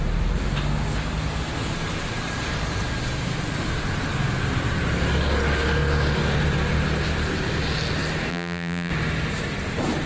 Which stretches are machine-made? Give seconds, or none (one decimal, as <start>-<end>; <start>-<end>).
8.3-8.9